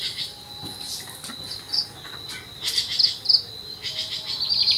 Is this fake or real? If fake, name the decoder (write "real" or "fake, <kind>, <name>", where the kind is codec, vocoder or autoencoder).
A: real